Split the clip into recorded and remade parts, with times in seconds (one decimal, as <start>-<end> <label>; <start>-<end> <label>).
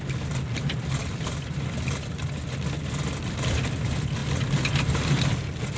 0.0-5.8 recorded